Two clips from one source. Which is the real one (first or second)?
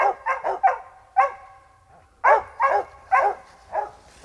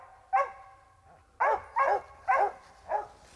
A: second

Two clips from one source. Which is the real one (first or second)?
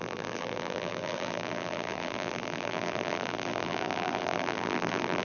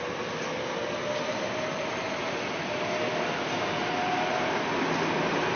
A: second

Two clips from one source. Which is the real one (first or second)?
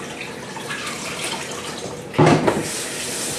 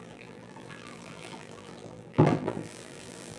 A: first